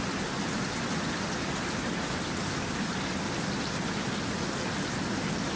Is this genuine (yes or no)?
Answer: yes